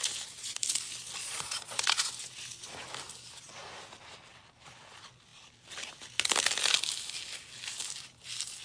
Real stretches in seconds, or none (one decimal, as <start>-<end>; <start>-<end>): 0.0-1.2; 2.1-8.6